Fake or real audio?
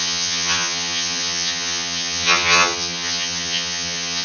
fake